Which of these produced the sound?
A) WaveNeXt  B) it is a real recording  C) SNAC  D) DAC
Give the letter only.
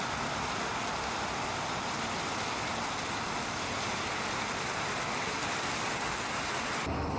B